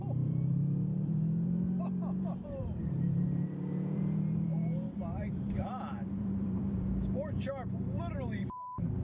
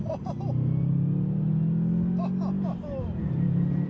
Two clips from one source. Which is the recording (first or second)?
second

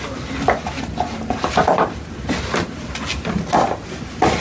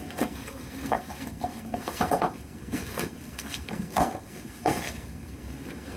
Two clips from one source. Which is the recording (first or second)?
first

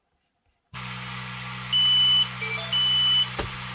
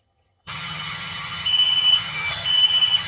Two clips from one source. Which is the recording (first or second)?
first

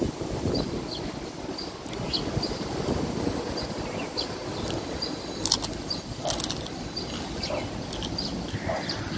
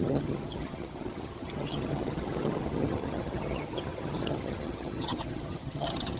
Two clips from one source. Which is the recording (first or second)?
first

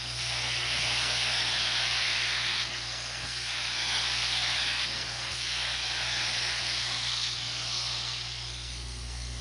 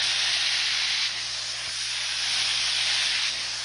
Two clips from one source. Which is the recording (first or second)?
second